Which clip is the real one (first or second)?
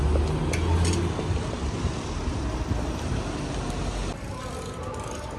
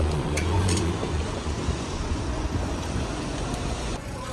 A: first